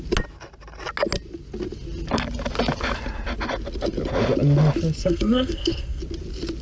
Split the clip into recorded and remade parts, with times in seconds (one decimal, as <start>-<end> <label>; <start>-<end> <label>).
0.0-5.0 recorded; 5.0-6.0 remade; 6.0-6.6 recorded